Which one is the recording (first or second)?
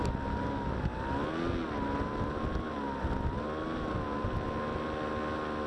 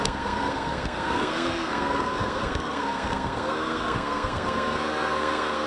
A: first